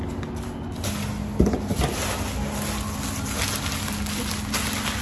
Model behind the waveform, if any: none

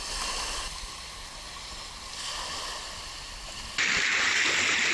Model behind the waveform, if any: none